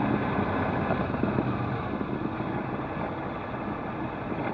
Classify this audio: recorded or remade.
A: recorded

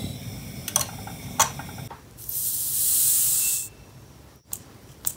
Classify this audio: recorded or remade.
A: recorded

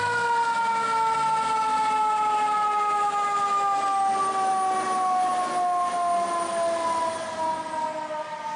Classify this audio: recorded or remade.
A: recorded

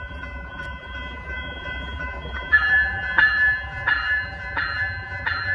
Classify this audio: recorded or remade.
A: remade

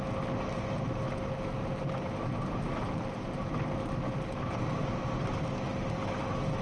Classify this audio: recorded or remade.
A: recorded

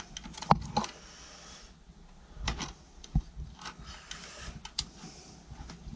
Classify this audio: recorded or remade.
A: recorded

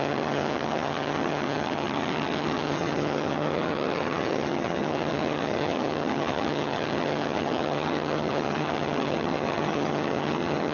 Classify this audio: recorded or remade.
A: remade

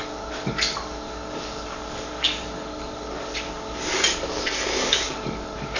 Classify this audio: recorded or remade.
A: remade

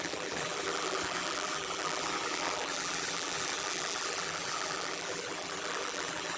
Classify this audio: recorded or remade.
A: remade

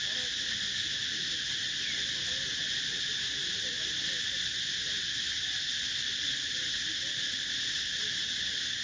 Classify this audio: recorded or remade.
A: recorded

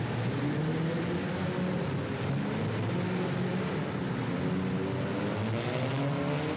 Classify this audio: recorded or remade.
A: recorded